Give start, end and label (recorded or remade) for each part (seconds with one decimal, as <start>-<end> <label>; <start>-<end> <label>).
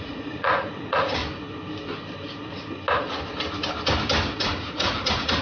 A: 0.0-1.2 remade; 1.2-4.4 recorded; 4.4-5.4 remade